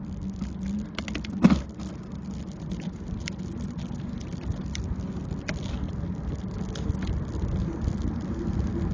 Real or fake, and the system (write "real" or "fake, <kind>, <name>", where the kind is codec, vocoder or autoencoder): real